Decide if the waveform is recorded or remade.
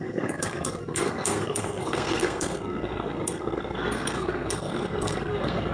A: remade